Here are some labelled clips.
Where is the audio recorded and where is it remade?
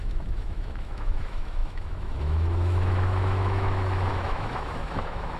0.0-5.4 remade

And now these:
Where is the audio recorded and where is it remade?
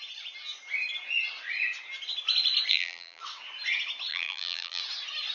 0.0-2.7 recorded; 2.7-3.2 remade; 3.2-4.1 recorded; 4.1-4.8 remade; 4.8-5.3 recorded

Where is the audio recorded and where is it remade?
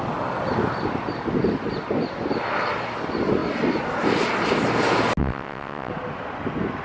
0.0-5.2 recorded; 5.2-5.9 remade; 5.9-6.8 recorded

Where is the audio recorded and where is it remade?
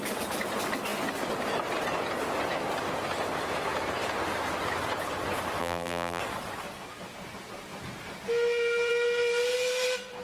0.0-5.6 recorded; 5.6-6.2 remade; 6.2-10.2 recorded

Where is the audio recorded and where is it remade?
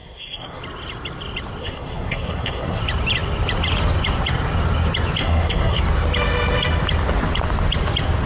0.0-0.6 remade; 0.6-1.6 recorded; 1.6-2.8 remade; 2.8-5.2 recorded; 5.2-5.8 remade; 5.8-8.3 recorded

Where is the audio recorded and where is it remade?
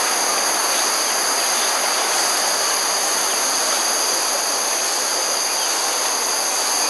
0.0-6.9 recorded